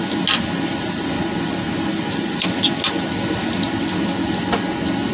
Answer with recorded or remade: recorded